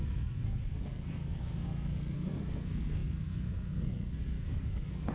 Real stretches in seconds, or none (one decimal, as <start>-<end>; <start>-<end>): none